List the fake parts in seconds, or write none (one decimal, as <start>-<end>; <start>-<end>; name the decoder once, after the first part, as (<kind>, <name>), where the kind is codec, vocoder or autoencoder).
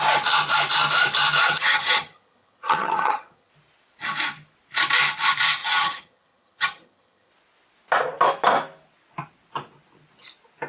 1.4-3.5 (vocoder, HiFi-GAN); 5.6-7.3